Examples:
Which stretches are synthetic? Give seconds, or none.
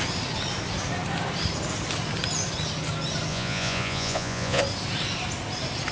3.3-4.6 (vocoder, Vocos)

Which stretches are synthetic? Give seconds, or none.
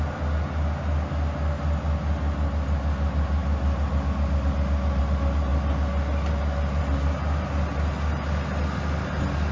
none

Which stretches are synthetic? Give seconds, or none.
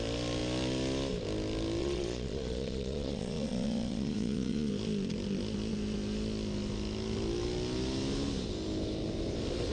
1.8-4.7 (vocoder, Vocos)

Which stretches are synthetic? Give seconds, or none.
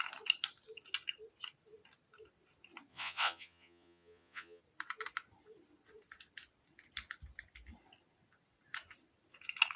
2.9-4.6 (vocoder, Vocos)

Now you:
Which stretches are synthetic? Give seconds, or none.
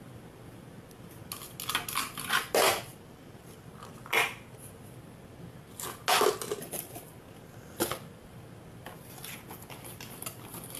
none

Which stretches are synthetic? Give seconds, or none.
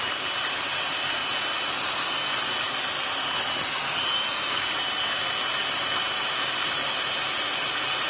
none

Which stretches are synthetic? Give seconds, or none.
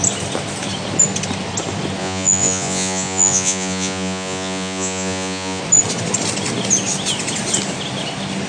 2.0-5.6 (vocoder, Vocos)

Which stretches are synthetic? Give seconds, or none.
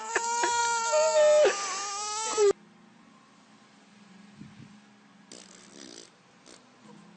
none